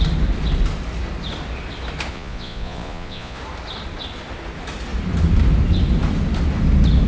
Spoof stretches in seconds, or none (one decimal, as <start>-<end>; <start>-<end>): 2.1-3.4